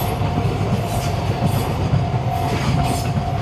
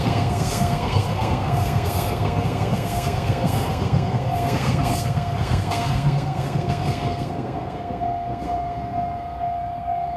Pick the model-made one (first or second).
second